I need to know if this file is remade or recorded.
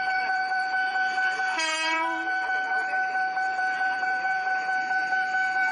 remade